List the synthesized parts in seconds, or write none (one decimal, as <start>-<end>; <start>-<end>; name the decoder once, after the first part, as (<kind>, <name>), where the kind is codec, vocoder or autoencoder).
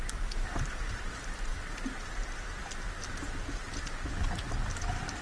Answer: none